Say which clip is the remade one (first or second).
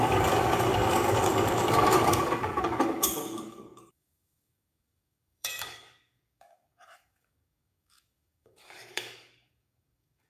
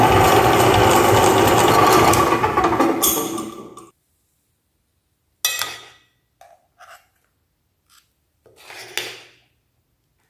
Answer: first